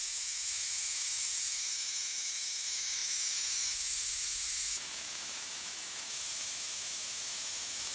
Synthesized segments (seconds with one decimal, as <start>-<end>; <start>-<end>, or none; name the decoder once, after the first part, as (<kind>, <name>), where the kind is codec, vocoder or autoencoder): 0.0-7.9 (autoencoder, DAC-VAE)